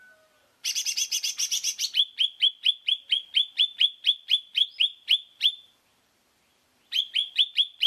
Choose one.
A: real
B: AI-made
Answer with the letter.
B